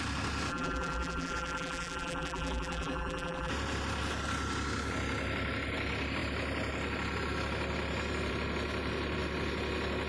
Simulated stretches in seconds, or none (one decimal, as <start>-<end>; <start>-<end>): 0.5-3.5